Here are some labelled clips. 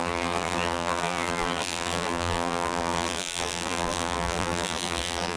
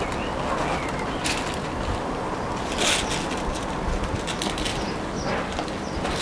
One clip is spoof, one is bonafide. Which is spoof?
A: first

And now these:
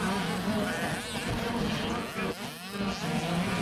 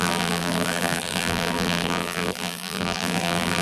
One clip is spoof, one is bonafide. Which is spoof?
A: second